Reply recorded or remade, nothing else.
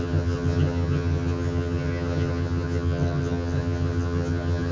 remade